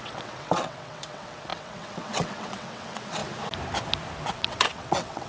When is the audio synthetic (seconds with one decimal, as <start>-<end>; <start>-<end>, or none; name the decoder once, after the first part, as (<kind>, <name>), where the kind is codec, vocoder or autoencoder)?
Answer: 0.0-3.2 (vocoder, WaveNeXt); 4.3-5.3